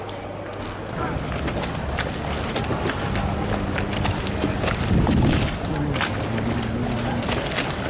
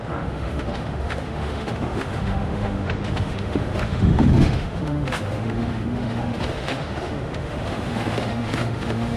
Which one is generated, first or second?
second